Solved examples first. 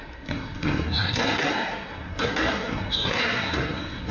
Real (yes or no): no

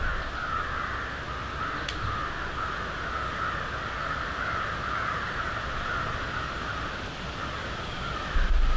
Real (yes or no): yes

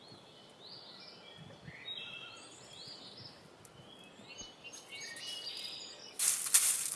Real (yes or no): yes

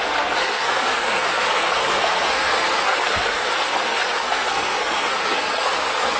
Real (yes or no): no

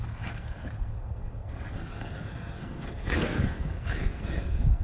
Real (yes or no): no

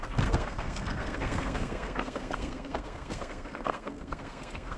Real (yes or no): no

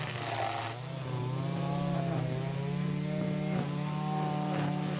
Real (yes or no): yes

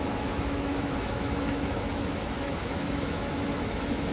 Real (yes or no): no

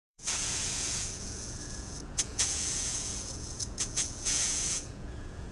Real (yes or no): no